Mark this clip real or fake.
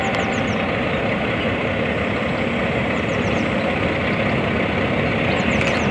real